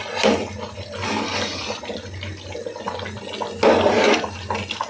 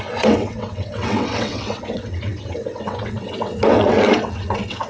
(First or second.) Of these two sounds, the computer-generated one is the second